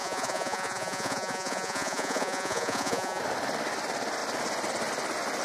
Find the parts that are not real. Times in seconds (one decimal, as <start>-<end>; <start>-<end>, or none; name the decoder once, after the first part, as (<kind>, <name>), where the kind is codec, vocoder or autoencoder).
0.0-3.2 (vocoder, Vocos)